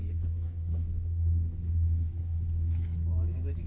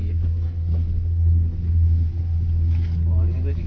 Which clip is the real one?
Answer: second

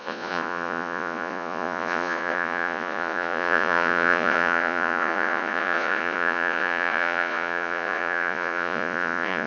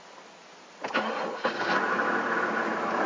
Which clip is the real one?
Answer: second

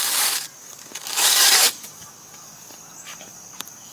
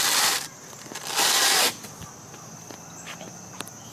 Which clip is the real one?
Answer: second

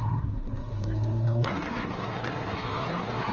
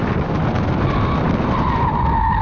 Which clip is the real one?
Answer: second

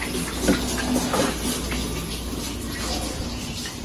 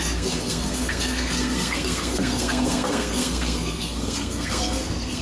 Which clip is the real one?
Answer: first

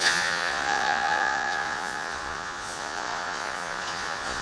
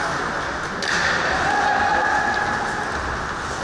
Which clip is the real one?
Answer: second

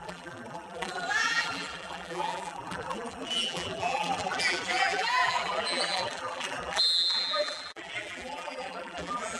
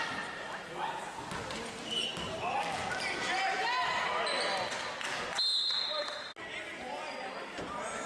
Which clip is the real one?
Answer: second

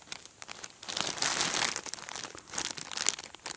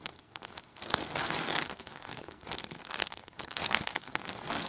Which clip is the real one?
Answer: first